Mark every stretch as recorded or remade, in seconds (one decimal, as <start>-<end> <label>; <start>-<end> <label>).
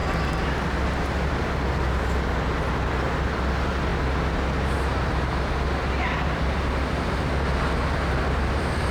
0.0-8.9 recorded